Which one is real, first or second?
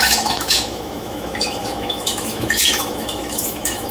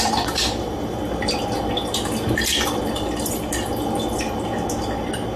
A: second